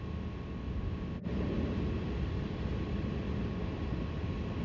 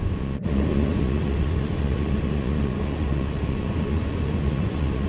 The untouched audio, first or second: first